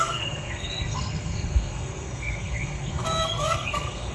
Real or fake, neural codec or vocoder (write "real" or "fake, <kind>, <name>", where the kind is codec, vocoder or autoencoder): fake, codec, SNAC